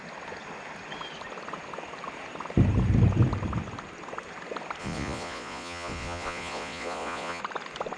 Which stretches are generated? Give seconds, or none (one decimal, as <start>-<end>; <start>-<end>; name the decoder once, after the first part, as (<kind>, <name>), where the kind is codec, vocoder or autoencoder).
4.8-7.4 (vocoder, Vocos)